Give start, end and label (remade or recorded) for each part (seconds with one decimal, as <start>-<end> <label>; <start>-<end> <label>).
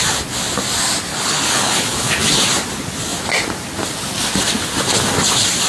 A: 0.0-1.1 recorded; 1.1-2.2 remade; 2.2-5.7 recorded